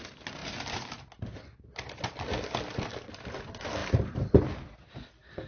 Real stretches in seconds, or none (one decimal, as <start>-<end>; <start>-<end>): 0.0-5.5